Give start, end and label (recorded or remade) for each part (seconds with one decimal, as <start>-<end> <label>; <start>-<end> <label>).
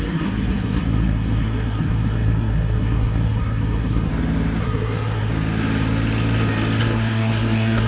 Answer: 0.0-4.1 remade; 4.1-4.6 recorded; 4.6-5.3 remade; 5.3-6.8 recorded; 6.8-7.9 remade